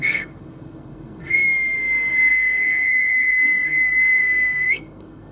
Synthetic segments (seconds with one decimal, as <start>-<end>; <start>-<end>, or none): 0.0-5.3